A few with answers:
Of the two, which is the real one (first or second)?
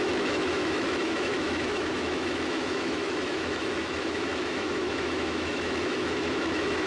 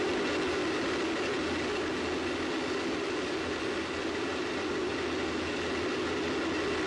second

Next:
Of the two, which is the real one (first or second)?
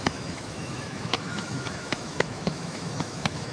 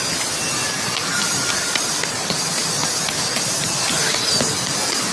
second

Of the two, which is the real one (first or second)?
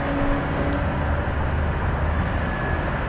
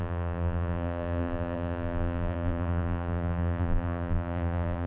first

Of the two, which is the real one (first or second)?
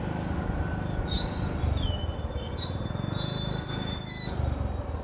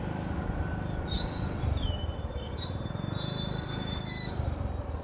first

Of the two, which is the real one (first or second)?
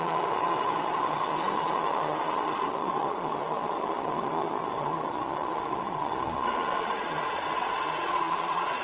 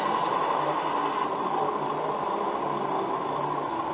second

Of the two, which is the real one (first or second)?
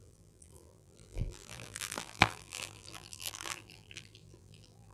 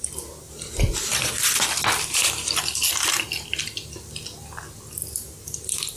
second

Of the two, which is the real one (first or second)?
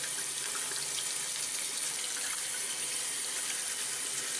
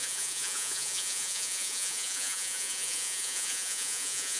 first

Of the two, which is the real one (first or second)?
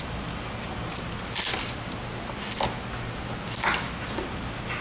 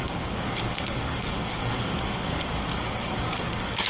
first